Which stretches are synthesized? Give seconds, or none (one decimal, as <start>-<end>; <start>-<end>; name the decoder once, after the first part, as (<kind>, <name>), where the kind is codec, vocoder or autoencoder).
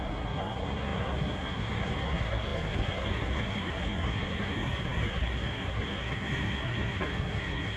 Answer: 0.0-7.8 (codec, SNAC)